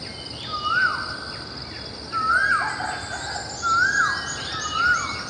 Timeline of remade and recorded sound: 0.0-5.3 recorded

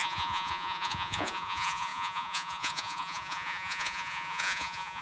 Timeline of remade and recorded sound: 0.0-5.0 remade

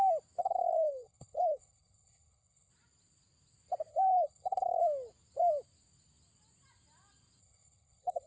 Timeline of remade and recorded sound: 0.0-0.4 recorded; 0.4-2.7 remade; 2.7-3.9 recorded; 3.9-4.8 remade; 4.8-7.4 recorded; 7.4-8.3 remade